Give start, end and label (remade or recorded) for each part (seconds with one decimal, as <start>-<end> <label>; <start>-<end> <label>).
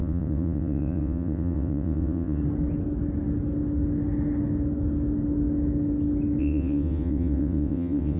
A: 0.0-2.4 remade; 2.4-6.4 recorded; 6.4-8.2 remade